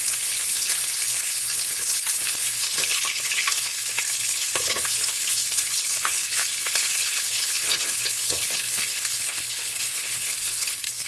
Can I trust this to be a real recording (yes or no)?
no